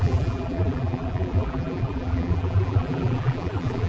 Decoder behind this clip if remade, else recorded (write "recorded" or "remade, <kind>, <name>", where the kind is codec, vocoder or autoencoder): remade, vocoder, BigVGAN v2